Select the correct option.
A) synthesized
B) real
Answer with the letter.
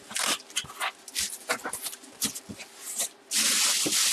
B